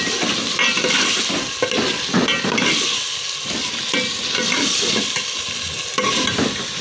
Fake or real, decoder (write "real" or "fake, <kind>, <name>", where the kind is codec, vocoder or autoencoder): real